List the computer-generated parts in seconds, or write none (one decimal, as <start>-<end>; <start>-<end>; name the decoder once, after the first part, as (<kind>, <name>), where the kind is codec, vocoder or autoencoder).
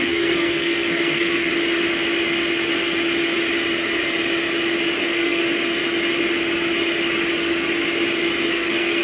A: 0.0-1.5 (codec, SNAC); 5.0-5.4; 8.5-9.0